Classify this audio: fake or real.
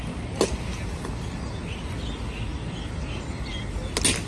real